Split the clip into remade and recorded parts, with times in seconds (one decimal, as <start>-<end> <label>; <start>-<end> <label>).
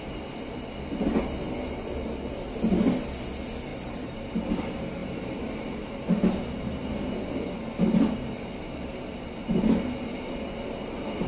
0.0-3.7 recorded; 3.7-4.3 remade; 4.3-5.0 recorded; 5.0-6.7 remade; 6.7-11.3 recorded